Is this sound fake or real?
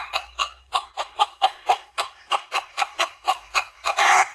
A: fake